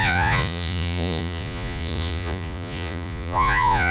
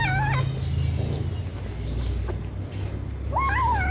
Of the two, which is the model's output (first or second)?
first